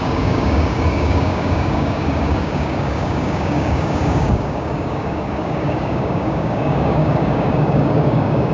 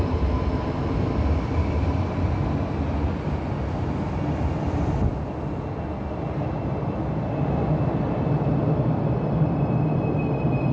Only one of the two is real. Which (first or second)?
second